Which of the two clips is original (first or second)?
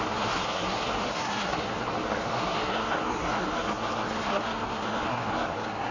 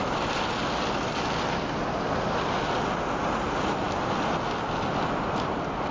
second